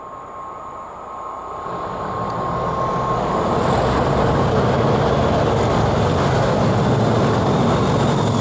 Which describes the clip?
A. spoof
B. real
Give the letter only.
B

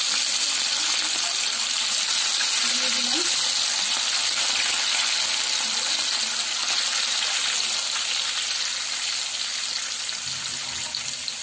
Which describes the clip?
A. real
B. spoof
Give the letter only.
A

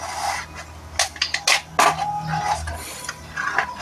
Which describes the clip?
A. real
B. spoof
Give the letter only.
A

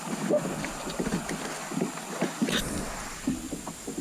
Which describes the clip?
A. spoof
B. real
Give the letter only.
B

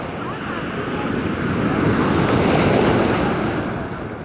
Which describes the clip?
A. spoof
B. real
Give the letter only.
B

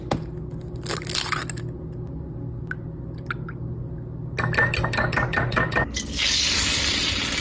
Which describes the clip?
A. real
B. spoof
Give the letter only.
A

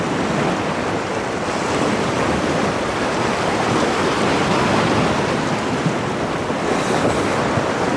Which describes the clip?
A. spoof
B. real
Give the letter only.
A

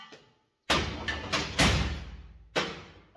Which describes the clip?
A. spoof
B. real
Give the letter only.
B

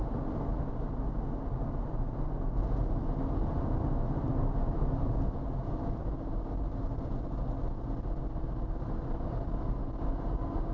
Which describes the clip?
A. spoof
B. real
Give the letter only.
B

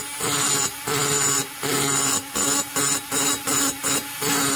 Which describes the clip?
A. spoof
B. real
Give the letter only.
B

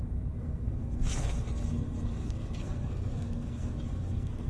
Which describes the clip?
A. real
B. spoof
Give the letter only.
B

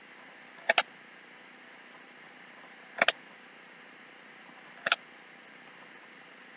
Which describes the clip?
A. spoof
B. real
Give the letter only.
B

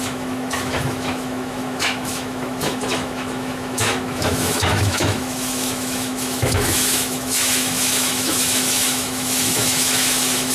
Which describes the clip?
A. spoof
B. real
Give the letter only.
A